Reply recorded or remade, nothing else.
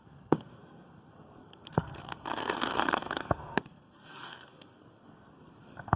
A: remade